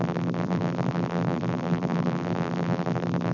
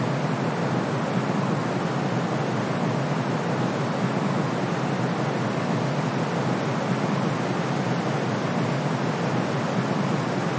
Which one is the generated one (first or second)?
first